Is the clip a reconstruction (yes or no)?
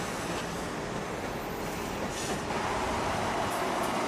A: no